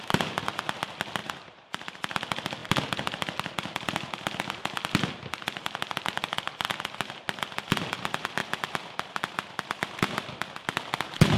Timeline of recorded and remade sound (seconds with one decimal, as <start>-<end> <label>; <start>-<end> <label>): 0.0-1.2 recorded; 1.2-2.0 remade; 2.0-11.4 recorded